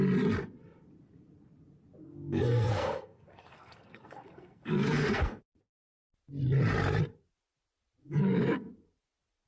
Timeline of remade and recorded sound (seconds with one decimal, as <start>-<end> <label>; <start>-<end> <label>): 0.0-2.0 recorded; 2.0-5.4 remade; 5.4-8.0 recorded; 8.0-8.7 remade; 8.7-9.5 recorded